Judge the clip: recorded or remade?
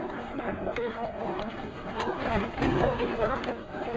remade